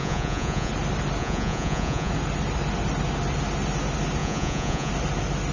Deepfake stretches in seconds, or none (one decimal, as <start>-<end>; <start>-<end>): 0.0-0.7; 1.2-2.1; 4.2-4.9